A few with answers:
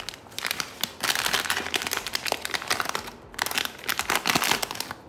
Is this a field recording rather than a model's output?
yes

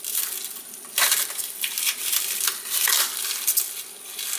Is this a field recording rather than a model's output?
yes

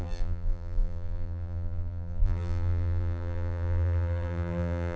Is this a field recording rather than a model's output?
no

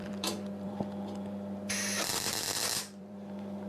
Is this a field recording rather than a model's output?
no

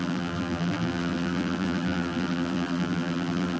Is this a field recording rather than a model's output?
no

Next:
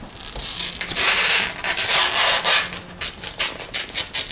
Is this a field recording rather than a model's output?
yes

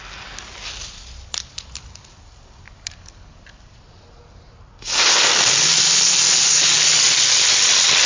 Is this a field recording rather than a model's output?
yes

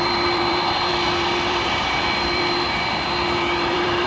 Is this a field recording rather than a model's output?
no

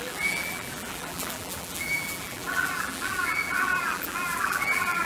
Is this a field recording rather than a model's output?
no